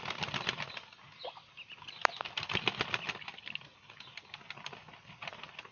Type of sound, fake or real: real